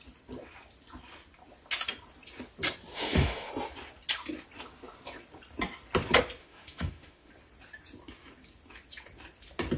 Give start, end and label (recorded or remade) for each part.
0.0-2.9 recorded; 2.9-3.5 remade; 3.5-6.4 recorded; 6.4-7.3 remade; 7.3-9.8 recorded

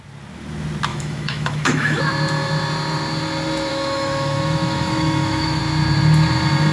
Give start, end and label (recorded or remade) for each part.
0.0-0.9 recorded; 0.9-2.0 remade; 2.0-3.7 recorded; 3.7-5.6 remade; 5.6-6.7 recorded

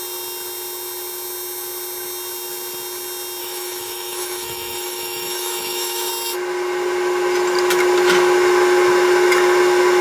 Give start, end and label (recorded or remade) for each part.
0.0-3.4 recorded; 3.4-6.1 remade; 6.1-10.0 recorded

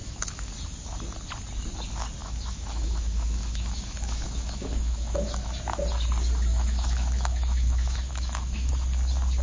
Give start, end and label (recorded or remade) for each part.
0.0-0.5 remade; 0.5-2.2 recorded; 2.2-5.5 remade; 5.5-6.5 recorded; 6.5-8.7 remade; 8.7-9.4 recorded

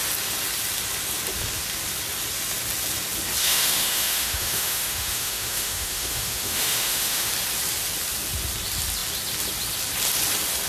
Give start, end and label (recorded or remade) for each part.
0.0-3.4 recorded; 3.4-7.3 remade; 7.3-10.7 recorded